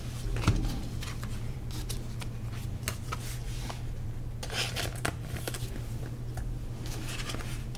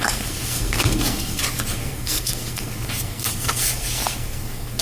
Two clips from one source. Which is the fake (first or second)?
second